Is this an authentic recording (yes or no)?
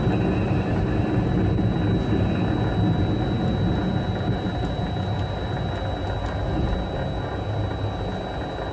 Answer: yes